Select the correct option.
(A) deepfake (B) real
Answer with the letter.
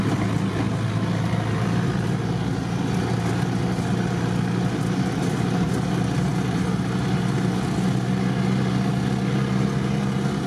B